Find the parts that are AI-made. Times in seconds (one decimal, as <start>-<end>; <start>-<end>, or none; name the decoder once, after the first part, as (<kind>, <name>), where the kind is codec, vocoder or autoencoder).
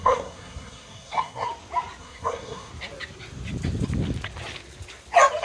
0.0-1.5 (codec, SNAC); 2.0-2.7